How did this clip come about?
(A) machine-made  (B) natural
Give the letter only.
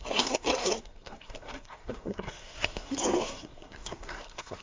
A